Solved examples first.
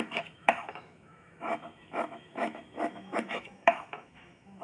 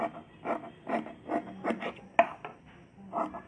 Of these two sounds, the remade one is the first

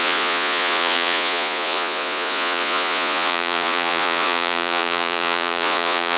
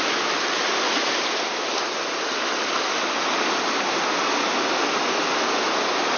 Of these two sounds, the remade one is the first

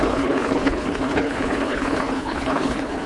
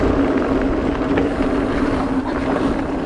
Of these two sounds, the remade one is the first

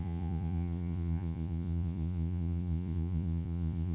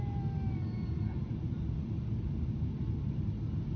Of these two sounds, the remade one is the first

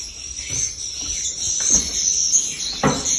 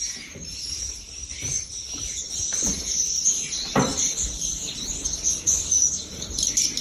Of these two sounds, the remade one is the second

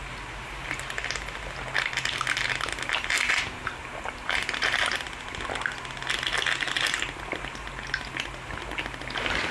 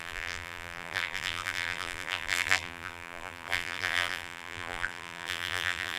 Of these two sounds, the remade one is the second